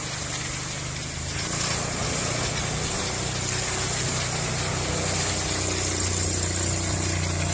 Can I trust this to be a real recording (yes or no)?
yes